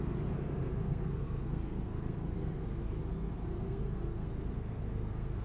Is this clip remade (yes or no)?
yes